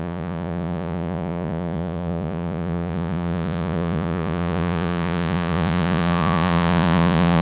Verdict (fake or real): fake